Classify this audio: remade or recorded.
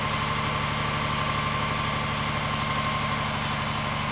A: recorded